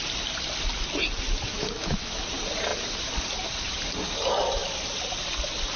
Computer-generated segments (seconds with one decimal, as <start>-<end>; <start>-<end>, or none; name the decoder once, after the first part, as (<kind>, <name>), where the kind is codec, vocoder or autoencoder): 1.5-2.2 (autoencoder, DAC-VAE)